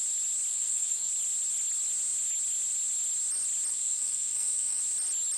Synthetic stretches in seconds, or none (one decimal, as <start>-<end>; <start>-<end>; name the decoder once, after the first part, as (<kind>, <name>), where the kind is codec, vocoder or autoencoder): 0.5-1.1 (codec, SNAC); 3.7-4.8